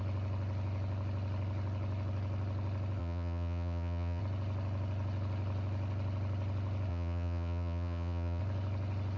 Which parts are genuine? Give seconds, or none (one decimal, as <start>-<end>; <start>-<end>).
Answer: 0.0-3.0; 4.2-6.9; 8.4-9.2